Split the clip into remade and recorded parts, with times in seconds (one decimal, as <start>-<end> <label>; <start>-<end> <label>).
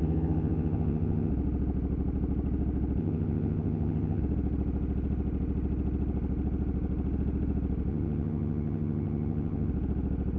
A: 0.0-1.3 remade; 1.3-3.0 recorded; 3.0-4.2 remade; 4.2-7.9 recorded; 7.9-9.7 remade; 9.7-10.4 recorded